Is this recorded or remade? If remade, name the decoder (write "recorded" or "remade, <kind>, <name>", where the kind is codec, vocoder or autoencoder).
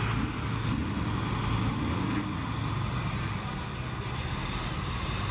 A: recorded